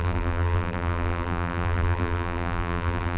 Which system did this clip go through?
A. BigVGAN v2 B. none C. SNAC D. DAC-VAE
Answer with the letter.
A